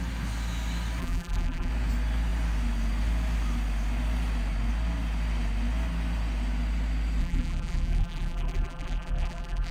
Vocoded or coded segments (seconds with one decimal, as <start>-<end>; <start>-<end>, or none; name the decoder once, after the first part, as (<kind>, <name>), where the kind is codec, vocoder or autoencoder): 1.0-1.7 (vocoder, BigVGAN v2); 7.2-9.7